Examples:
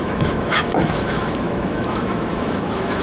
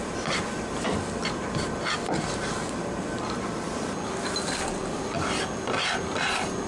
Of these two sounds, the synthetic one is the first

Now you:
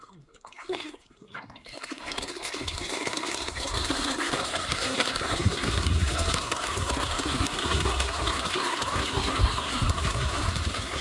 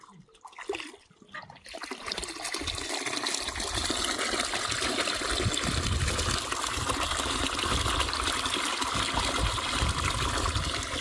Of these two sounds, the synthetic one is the first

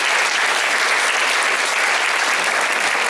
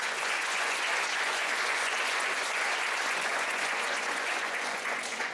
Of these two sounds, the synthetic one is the second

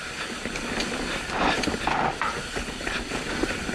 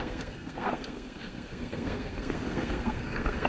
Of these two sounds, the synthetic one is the second